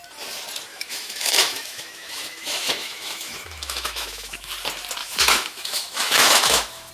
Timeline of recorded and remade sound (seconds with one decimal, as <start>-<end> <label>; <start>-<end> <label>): 0.0-0.7 recorded; 0.7-4.5 remade; 4.5-5.0 recorded; 5.0-6.9 remade